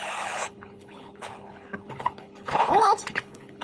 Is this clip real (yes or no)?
no